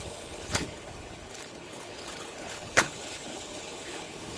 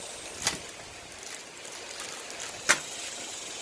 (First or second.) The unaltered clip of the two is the second